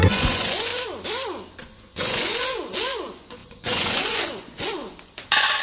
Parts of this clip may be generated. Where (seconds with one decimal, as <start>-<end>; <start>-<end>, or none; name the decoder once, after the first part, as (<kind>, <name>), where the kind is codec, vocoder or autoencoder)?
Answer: 0.0-0.7 (vocoder, Vocos); 1.6-5.6